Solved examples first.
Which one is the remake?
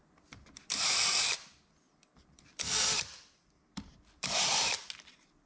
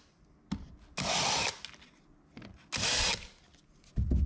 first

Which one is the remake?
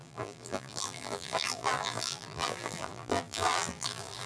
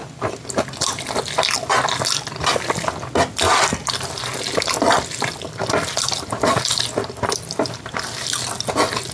first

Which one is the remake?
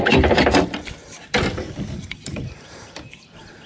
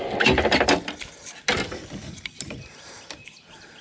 first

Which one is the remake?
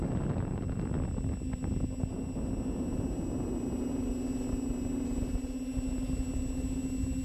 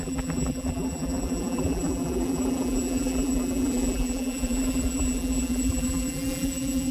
second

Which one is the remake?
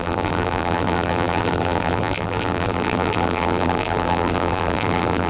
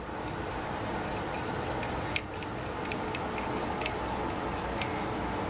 first